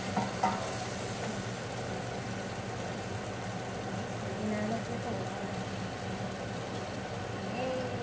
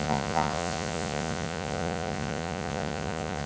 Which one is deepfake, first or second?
second